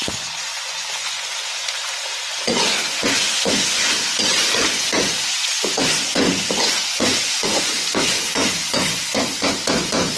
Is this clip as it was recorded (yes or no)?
no